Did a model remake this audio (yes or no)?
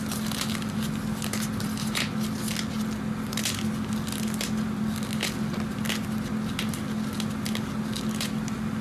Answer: no